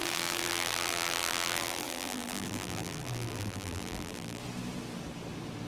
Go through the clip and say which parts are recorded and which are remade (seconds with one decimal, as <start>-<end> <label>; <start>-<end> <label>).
0.0-4.4 remade; 4.4-5.7 recorded